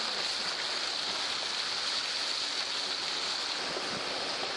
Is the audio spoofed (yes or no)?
no